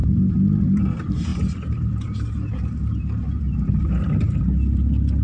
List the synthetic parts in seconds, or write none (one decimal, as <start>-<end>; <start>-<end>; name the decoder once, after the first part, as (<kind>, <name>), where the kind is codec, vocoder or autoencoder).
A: 0.0-0.8 (vocoder, BigVGAN v2); 1.3-4.4

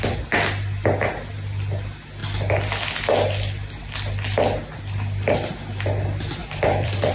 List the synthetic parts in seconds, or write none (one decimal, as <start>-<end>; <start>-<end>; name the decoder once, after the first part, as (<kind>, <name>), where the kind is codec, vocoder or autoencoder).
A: 6.4-7.1 (vocoder, BigVGAN v2)